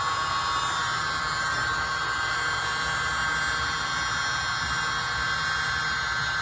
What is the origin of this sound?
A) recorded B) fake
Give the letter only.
A